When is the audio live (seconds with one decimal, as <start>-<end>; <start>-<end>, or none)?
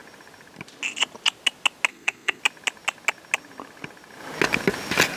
0.0-1.9; 2.4-5.2